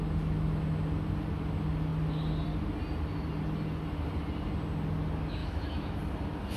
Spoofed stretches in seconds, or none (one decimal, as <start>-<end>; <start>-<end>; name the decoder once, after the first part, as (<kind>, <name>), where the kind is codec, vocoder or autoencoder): 5.4-6.0 (autoencoder, DAC-VAE)

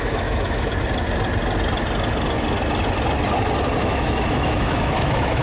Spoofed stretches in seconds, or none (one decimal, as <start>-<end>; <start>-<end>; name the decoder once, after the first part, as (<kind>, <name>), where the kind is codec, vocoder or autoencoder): 0.0-0.7 (autoencoder, DAC-VAE); 3.8-5.4

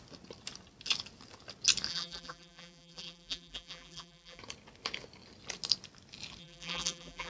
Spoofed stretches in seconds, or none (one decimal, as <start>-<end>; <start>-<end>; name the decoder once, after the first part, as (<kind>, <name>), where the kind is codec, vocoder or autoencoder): 1.9-4.4 (vocoder, BigVGAN v2); 6.4-7.3

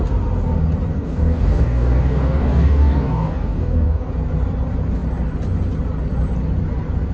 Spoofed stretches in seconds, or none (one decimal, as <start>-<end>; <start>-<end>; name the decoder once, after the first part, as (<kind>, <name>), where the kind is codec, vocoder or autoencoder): 0.9-4.1 (codec, DAC)

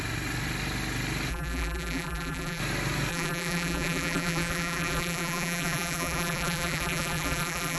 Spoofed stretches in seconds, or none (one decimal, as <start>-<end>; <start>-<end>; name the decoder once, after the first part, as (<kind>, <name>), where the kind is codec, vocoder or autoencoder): 1.3-2.6 (vocoder, BigVGAN v2); 3.1-7.8

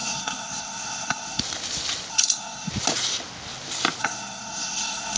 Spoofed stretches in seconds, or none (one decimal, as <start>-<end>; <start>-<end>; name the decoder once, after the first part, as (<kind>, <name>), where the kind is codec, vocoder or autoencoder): 0.0-1.4 (codec, SNAC); 2.1-2.7; 4.0-5.2

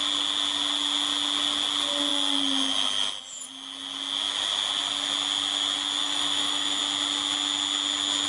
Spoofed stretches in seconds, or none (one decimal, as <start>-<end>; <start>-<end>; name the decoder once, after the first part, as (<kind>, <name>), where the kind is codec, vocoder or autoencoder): 6.0-6.8 (autoencoder, DAC-VAE)

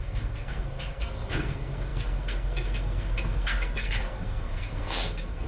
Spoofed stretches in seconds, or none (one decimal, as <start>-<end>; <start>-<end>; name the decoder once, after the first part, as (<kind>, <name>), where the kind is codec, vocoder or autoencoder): 0.0-5.5 (codec, SNAC)